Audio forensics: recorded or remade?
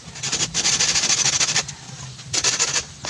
recorded